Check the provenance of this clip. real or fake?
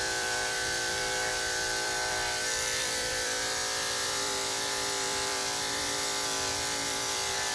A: fake